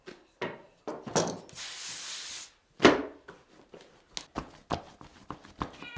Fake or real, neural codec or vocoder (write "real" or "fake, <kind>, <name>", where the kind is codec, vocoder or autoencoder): real